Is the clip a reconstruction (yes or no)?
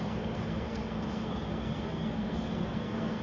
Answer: yes